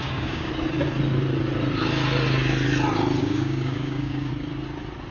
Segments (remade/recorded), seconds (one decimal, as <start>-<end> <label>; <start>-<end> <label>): 0.0-0.5 remade; 0.5-3.2 recorded; 3.2-4.3 remade; 4.3-5.1 recorded